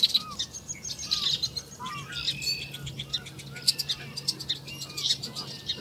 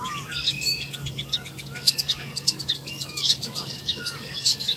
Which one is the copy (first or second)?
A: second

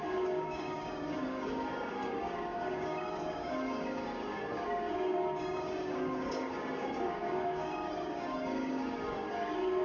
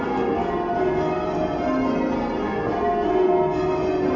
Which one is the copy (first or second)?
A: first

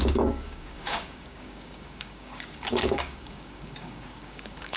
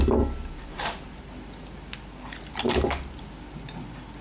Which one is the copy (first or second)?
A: first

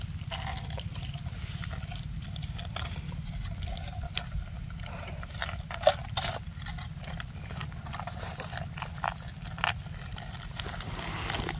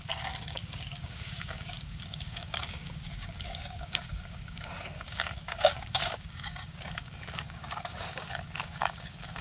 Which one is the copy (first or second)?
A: second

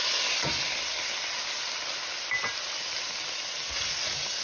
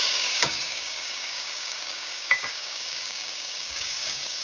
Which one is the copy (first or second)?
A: second